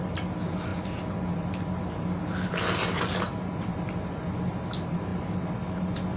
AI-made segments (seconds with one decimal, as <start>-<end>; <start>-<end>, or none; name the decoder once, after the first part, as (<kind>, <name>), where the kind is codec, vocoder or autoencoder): none